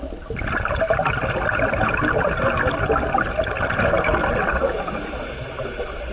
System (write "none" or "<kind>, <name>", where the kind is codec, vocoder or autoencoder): none